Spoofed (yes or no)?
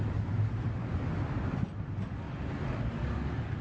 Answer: no